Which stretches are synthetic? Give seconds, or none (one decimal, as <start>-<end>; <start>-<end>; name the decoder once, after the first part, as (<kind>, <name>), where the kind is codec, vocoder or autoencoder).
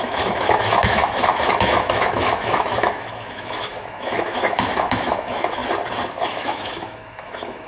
0.0-5.6 (autoencoder, DAC-VAE); 6.1-7.7